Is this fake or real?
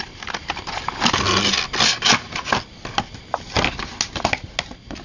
real